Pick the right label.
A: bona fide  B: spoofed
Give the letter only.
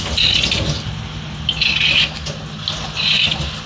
A